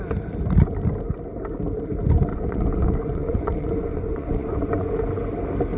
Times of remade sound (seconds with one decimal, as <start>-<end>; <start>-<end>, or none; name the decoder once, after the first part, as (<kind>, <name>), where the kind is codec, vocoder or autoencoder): 2.3-4.9 (vocoder, Vocos)